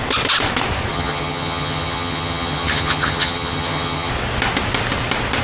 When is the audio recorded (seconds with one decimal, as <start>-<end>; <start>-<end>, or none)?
0.0-0.9; 4.1-5.4